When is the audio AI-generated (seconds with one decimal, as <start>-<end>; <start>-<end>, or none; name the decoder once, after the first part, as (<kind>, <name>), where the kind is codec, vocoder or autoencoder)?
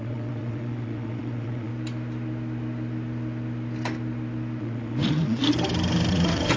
0.0-1.7 (vocoder, WaveNeXt); 4.6-5.4; 6.1-6.6